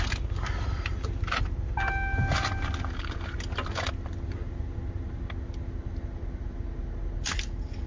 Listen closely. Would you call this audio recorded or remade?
recorded